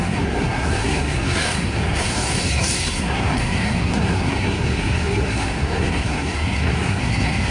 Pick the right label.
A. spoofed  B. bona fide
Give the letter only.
A